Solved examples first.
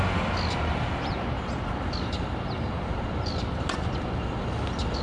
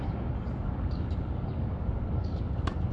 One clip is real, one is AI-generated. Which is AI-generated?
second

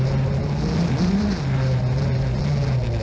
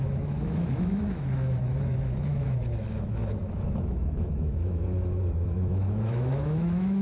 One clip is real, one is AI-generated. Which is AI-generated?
second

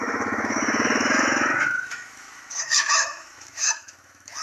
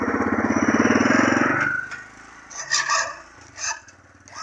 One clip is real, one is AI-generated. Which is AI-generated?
first